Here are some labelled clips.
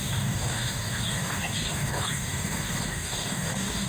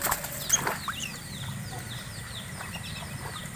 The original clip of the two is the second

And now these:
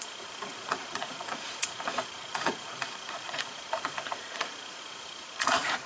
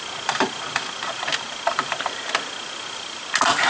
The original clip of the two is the second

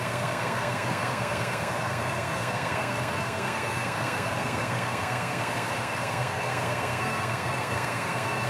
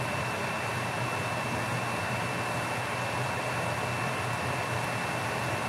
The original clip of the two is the second